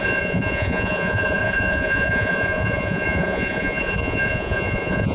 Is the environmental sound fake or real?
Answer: fake